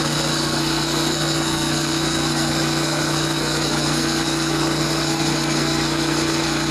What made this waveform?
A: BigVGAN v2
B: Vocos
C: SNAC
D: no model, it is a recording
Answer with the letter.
C